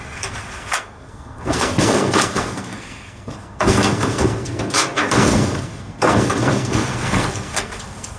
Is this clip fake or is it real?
fake